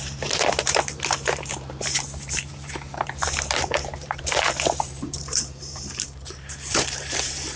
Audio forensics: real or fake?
fake